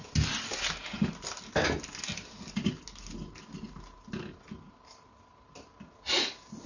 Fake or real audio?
real